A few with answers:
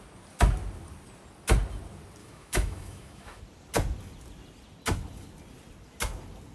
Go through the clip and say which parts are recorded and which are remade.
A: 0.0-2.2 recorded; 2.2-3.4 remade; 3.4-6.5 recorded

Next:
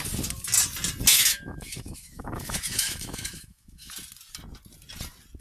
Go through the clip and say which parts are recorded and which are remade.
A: 0.0-1.1 recorded; 1.1-3.9 remade; 3.9-5.4 recorded

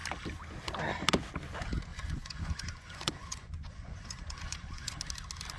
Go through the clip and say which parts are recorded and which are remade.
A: 0.0-1.9 recorded; 1.9-5.0 remade; 5.0-5.6 recorded

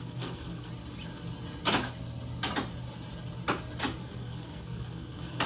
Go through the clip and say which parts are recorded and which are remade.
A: 0.0-0.7 remade; 0.7-4.0 recorded; 4.0-5.5 remade

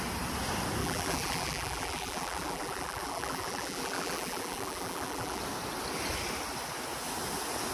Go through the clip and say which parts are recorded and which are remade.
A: 0.0-0.8 recorded; 0.8-5.4 remade; 5.4-7.7 recorded

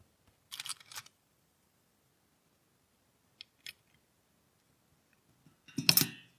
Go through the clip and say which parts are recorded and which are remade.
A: 0.0-0.7 recorded; 0.7-2.1 remade; 2.1-6.4 recorded

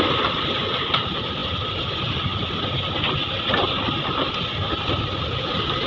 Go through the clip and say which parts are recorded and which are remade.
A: 0.0-5.9 recorded

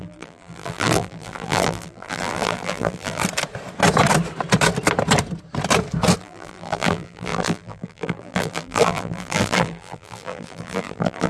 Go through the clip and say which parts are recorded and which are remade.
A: 0.0-3.2 remade; 3.2-6.2 recorded; 6.2-11.3 remade